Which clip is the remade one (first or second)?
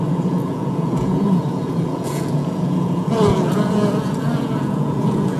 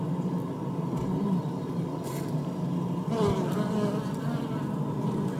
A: first